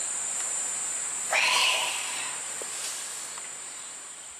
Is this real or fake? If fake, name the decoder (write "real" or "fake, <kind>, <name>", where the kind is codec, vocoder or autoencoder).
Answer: fake, vocoder, BigVGAN v2